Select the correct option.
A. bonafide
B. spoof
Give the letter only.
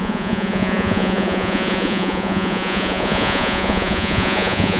B